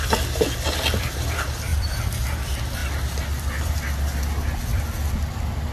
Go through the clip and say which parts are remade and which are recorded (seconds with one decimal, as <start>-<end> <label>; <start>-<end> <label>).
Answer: 0.0-5.7 recorded